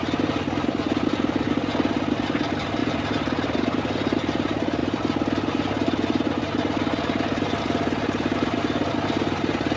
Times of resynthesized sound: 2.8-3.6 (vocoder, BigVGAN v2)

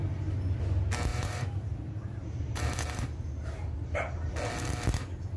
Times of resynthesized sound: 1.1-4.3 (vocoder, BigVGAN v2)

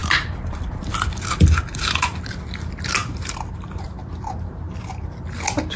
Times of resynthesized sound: 0.0-2.5 (vocoder, BigVGAN v2); 3.0-4.3